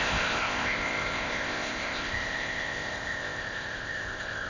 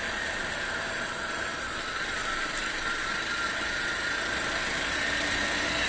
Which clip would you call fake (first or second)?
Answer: first